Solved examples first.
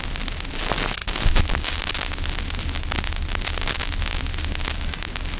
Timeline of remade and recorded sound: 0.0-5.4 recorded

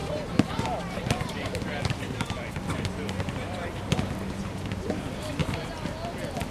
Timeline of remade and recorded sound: 0.0-5.4 remade; 5.4-5.9 recorded; 5.9-6.5 remade